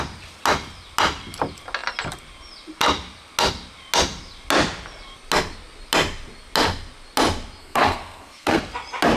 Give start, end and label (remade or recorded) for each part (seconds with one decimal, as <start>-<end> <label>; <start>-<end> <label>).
0.0-7.6 recorded; 7.6-8.6 remade; 8.6-9.2 recorded